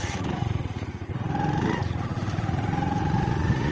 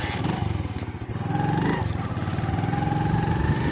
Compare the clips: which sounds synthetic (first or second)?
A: first